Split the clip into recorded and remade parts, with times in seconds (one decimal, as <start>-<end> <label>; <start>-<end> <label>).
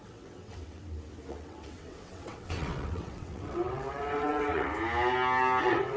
0.0-0.8 remade; 0.8-1.3 recorded; 1.3-4.7 remade; 4.7-5.6 recorded; 5.6-6.0 remade